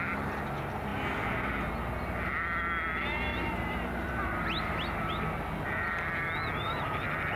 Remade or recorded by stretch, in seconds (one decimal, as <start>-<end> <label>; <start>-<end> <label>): 0.0-3.3 recorded; 3.3-5.1 remade; 5.1-7.4 recorded